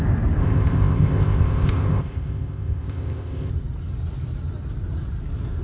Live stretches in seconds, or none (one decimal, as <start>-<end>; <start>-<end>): 0.0-0.4; 3.5-5.6